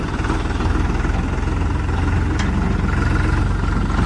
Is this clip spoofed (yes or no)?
no